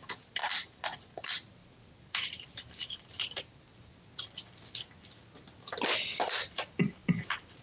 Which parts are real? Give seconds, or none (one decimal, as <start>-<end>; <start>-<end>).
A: 0.0-0.4; 1.0-1.6; 3.9-7.0